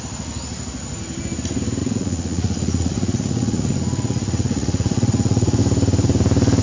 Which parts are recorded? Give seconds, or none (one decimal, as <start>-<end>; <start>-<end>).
0.0-1.8; 5.6-6.6